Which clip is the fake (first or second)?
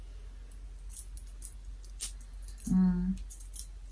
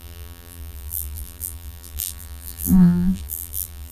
second